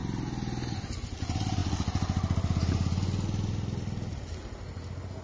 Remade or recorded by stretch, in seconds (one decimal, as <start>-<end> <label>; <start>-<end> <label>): 0.0-5.2 recorded